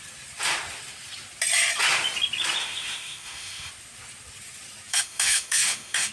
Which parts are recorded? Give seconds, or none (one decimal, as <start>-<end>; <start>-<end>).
0.0-2.6; 3.7-4.9